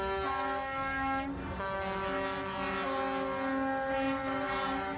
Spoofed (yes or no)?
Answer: no